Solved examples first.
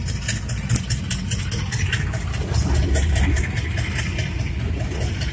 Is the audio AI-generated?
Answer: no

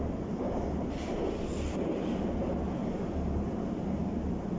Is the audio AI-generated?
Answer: no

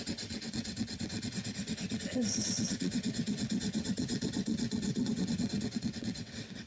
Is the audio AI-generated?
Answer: yes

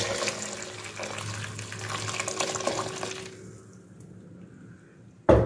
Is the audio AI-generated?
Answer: no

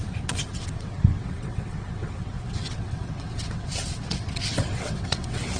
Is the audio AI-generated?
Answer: yes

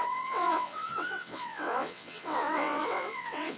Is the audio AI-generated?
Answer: yes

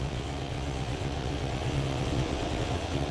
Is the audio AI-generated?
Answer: yes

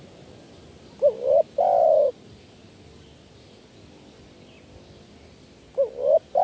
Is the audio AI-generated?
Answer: no